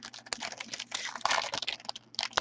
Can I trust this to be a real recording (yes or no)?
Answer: yes